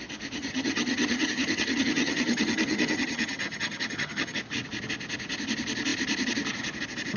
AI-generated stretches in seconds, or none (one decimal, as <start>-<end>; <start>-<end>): 0.4-4.4

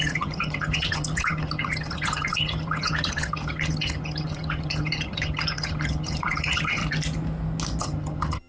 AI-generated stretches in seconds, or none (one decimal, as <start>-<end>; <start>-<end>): 0.0-6.8; 7.8-8.5

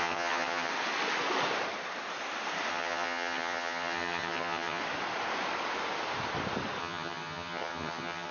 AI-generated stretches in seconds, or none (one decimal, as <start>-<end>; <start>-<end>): 0.0-0.7; 2.7-4.8; 6.8-8.3

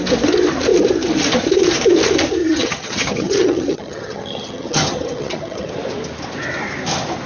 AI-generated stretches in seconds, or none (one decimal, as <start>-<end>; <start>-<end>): 2.4-5.7

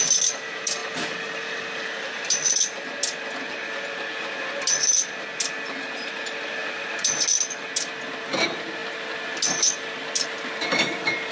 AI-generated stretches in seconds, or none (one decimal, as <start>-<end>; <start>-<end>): none

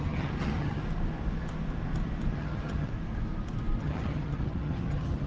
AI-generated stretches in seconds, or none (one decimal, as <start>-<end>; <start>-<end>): 0.0-0.8; 2.3-2.9; 3.8-5.3

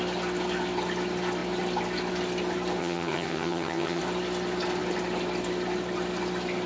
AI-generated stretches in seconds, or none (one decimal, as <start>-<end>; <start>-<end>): 2.8-4.0